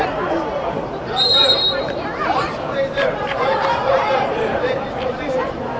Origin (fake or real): fake